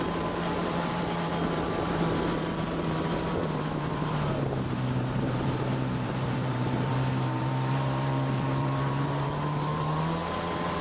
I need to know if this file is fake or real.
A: fake